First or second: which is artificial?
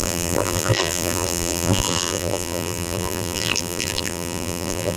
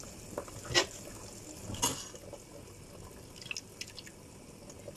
first